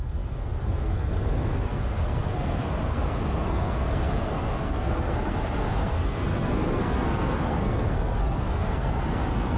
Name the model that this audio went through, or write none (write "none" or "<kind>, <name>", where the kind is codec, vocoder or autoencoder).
codec, SNAC